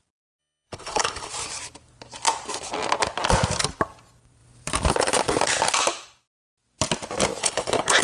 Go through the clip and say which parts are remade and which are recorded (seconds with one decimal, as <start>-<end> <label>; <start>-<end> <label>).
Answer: 0.0-0.4 recorded; 0.4-1.3 remade; 1.3-7.4 recorded; 7.4-8.0 remade